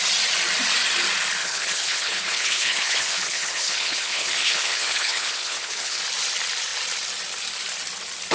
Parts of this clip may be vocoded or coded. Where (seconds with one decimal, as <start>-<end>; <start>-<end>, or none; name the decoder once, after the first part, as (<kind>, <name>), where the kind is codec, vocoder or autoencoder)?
1.4-6.0 (codec, HILCodec)